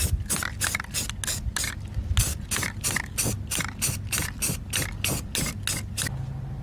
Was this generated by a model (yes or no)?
no